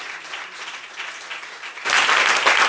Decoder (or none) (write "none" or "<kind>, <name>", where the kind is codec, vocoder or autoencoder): none